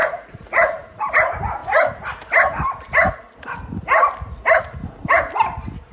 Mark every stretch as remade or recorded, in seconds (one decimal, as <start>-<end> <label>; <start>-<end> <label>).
0.0-1.2 remade; 1.2-5.9 recorded